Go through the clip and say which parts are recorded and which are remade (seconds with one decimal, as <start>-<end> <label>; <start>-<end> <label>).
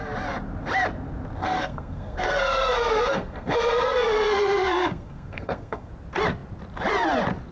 0.0-1.4 recorded; 1.4-5.9 remade; 5.9-7.5 recorded